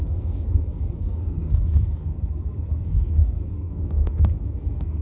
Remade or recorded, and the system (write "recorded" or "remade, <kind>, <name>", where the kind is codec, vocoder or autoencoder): remade, codec, SNAC